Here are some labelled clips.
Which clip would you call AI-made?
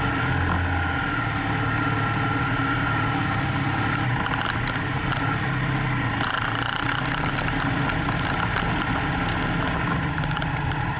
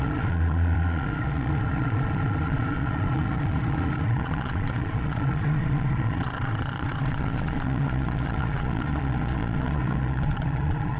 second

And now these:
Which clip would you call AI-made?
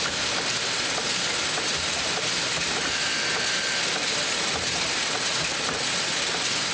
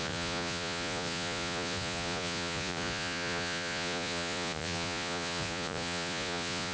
second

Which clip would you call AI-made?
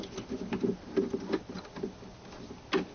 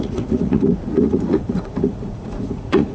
second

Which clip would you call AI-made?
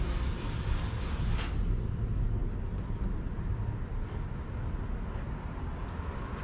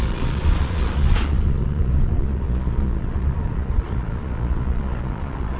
second